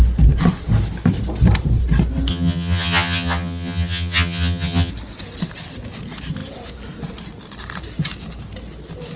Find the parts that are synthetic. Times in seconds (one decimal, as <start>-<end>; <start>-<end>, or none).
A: 2.3-4.9